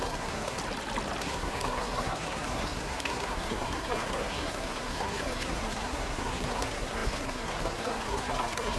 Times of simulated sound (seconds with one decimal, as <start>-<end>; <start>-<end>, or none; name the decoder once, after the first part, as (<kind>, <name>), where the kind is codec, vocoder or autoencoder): 0.0-0.6 (codec, SNAC); 1.2-8.8